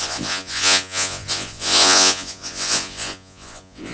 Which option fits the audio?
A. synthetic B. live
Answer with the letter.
A